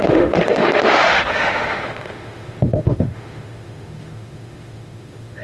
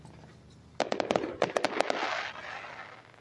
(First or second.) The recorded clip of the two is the second